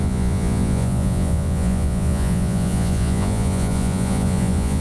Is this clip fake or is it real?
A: fake